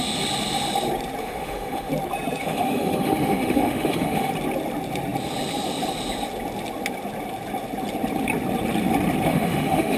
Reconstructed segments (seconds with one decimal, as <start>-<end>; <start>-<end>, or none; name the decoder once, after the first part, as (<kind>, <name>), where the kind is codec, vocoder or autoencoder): 1.2-1.9 (autoencoder, DAC-VAE); 2.4-4.3; 9.3-10.0